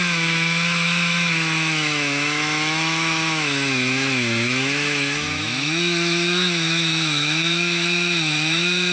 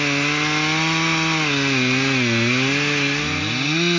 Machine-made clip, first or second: first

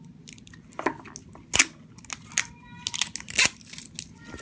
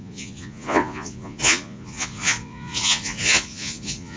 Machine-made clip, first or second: second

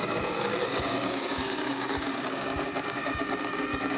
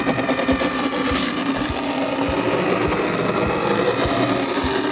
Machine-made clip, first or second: first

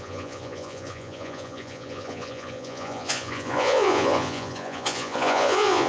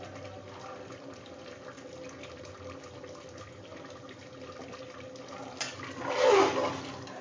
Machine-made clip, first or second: first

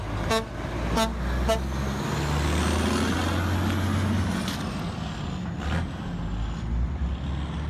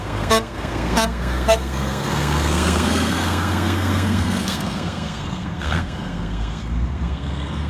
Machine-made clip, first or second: second